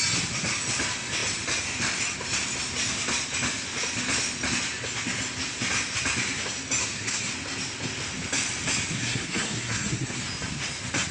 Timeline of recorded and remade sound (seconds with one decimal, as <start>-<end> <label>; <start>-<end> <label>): 0.0-6.8 recorded; 6.8-7.3 remade; 7.3-9.0 recorded; 9.0-10.2 remade; 10.2-11.1 recorded